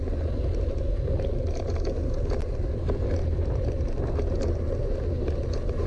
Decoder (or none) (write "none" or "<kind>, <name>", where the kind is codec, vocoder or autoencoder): none